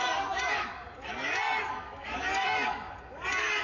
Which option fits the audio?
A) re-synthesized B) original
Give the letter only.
A